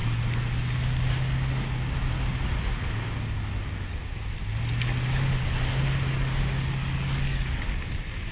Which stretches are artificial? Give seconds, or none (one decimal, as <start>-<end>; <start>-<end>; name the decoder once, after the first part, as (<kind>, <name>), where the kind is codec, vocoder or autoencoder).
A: 6.1-7.6 (codec, DAC)